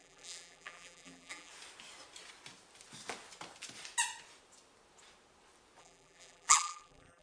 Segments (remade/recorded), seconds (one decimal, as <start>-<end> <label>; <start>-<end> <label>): 0.0-1.5 remade; 1.5-5.8 recorded; 5.8-7.2 remade